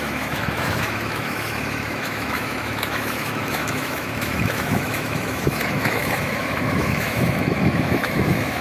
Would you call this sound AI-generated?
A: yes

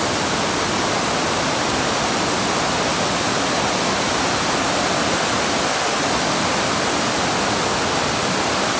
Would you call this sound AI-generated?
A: no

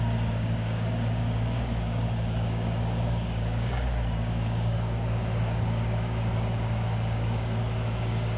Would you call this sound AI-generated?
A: yes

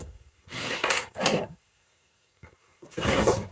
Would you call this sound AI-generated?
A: yes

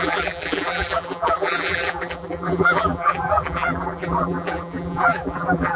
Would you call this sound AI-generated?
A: yes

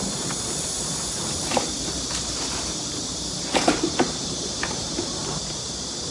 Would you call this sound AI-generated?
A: yes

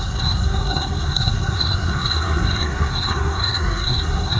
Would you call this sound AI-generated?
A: yes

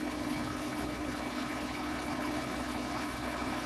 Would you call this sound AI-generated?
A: yes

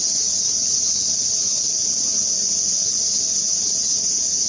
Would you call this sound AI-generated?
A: no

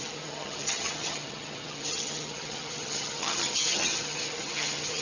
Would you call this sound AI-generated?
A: yes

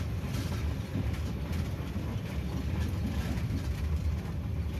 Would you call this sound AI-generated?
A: no